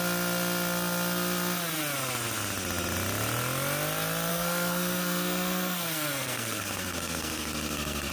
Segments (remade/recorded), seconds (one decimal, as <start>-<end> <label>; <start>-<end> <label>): 0.0-4.3 recorded; 4.3-8.1 remade